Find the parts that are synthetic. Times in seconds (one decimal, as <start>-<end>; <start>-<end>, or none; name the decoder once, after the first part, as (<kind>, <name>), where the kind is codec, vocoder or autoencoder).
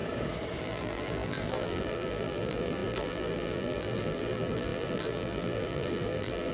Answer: 0.6-6.5 (vocoder, BigVGAN v2)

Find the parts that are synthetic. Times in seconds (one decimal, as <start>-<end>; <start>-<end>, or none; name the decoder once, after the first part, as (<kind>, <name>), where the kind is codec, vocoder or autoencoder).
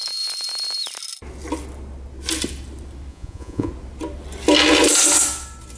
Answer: 3.1-3.7 (vocoder, Vocos)